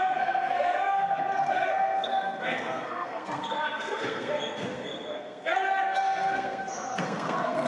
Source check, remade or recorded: remade